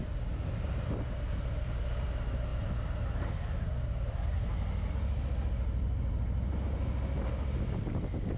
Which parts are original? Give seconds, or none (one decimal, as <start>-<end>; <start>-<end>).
0.0-8.4